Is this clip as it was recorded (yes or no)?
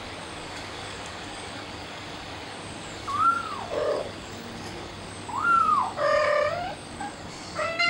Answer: no